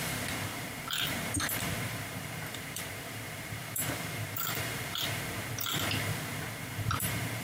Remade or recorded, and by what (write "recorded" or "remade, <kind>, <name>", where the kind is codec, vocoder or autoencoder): remade, vocoder, BigVGAN v2